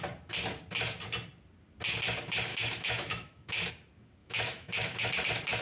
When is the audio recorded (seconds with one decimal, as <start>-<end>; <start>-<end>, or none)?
0.0-2.5; 3.7-4.2; 5.1-5.6